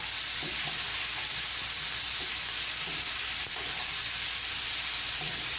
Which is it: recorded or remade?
recorded